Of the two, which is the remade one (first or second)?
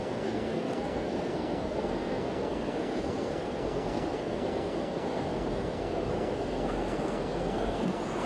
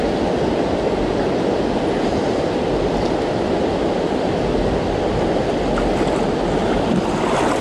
first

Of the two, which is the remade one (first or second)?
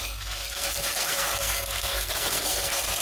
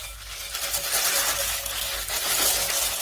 first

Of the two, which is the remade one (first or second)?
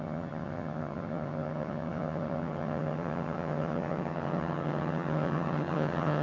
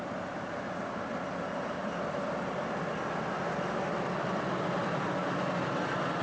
first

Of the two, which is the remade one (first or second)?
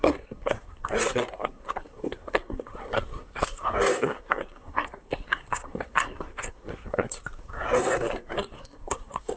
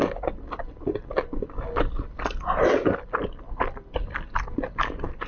first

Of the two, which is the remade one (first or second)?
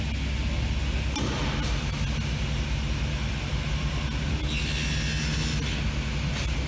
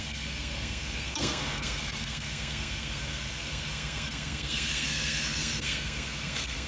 second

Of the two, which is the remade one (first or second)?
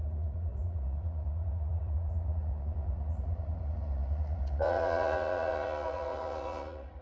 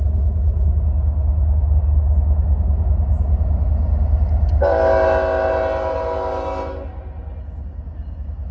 first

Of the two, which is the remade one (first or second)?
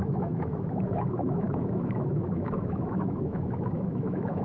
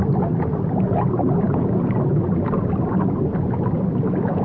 first